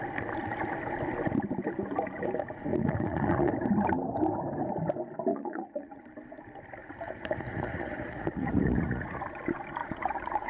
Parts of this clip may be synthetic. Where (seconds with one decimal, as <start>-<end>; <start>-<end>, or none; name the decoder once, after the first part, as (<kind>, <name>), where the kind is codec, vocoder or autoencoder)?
2.7-3.5 (vocoder, Vocos); 5.3-6.0; 6.8-9.2; 9.8-10.5